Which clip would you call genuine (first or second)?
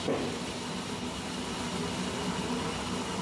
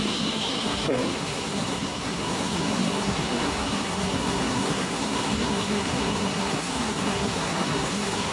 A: first